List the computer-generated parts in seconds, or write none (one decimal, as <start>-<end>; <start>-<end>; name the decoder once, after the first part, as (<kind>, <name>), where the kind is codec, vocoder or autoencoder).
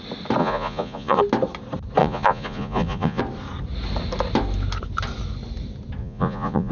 0.4-1.2 (vocoder, Vocos); 2.0-3.2; 6.0-6.7